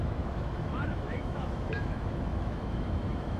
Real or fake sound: fake